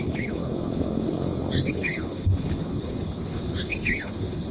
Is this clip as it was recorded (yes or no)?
no